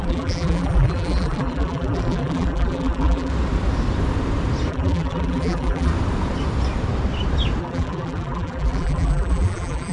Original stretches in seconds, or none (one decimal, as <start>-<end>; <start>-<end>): 3.3-4.7; 5.9-7.6